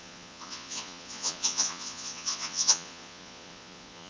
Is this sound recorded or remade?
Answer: remade